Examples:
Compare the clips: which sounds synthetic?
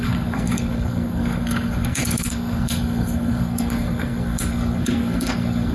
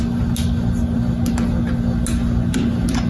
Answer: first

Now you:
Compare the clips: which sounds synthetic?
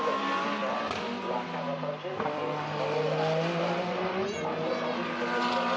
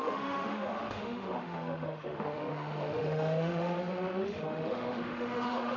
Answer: second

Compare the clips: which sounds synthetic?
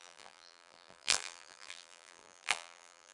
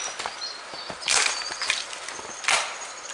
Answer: first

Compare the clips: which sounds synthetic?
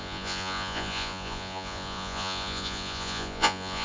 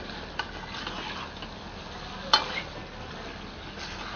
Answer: first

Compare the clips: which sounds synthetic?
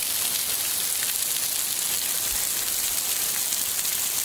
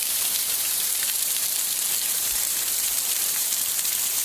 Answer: second